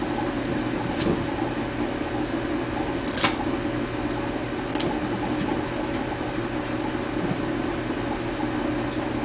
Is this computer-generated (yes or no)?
no